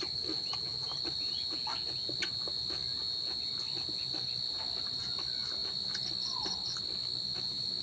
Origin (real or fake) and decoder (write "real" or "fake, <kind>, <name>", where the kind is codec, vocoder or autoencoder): real